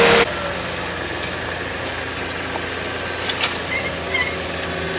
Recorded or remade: recorded